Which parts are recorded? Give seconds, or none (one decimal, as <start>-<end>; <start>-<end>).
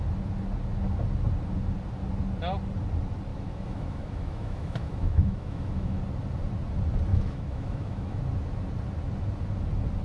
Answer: 0.0-3.3; 6.0-7.1; 8.2-10.0